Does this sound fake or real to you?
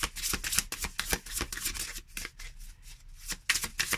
real